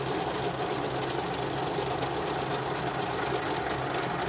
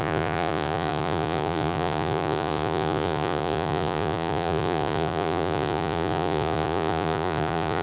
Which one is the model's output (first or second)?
second